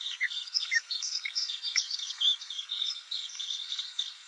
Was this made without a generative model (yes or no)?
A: no